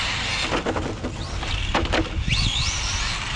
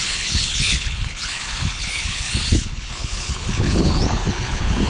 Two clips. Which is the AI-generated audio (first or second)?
second